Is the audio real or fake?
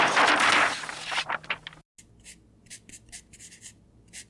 real